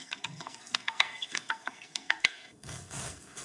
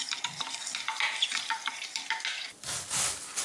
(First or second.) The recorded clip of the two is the second